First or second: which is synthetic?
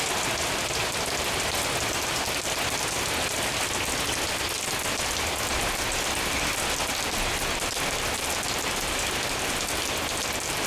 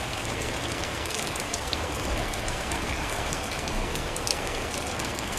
second